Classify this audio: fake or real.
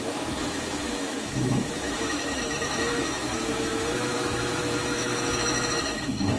fake